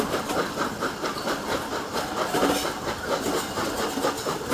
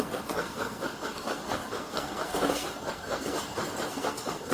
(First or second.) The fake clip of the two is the second